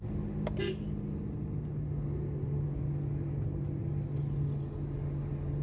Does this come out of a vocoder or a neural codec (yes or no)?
no